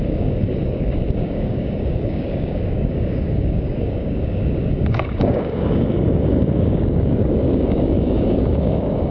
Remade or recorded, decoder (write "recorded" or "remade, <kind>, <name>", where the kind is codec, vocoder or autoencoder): remade, codec, DAC